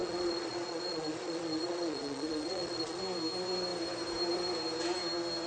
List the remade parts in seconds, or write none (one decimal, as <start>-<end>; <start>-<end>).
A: 0.0-3.0